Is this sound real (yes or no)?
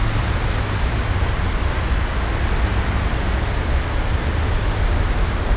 yes